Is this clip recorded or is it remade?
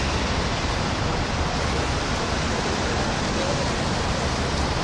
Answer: recorded